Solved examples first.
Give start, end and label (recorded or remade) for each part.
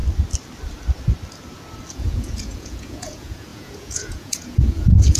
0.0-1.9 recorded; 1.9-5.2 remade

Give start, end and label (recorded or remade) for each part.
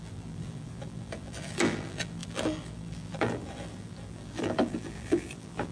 0.0-5.7 remade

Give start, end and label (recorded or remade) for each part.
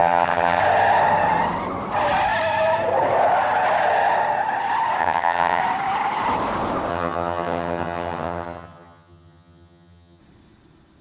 0.0-0.6 remade; 0.6-5.0 recorded; 5.0-5.6 remade; 5.6-6.9 recorded; 6.9-10.2 remade; 10.2-11.0 recorded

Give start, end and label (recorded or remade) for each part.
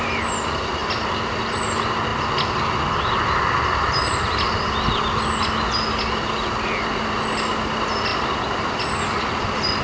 0.0-9.8 recorded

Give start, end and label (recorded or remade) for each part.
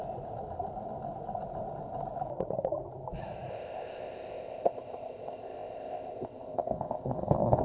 0.0-3.5 recorded; 3.5-7.6 remade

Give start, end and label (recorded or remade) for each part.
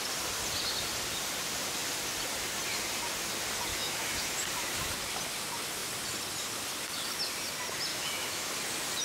0.0-3.7 recorded; 3.7-4.3 remade; 4.3-7.9 recorded; 7.9-8.5 remade; 8.5-9.0 recorded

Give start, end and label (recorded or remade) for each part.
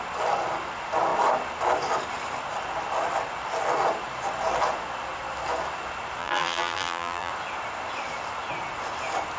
0.0-6.2 recorded; 6.2-7.3 remade; 7.3-9.4 recorded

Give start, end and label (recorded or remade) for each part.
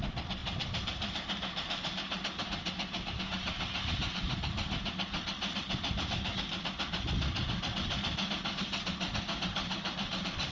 0.0-0.4 recorded; 0.4-3.2 remade; 3.2-9.6 recorded; 9.6-10.5 remade